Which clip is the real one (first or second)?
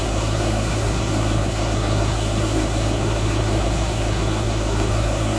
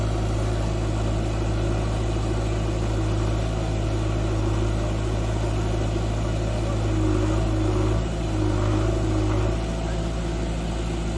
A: second